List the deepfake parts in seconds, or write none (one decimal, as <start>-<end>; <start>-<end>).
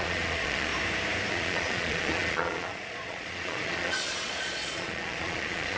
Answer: 0.0-0.7; 1.3-5.8